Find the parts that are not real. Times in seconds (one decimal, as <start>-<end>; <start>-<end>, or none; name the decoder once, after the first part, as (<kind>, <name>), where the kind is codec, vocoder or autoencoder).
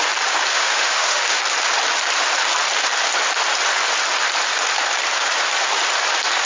0.5-1.4 (autoencoder, DAC-VAE)